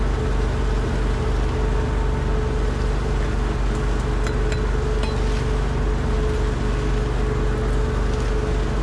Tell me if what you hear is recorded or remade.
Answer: recorded